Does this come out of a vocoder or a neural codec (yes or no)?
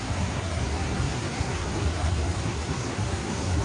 yes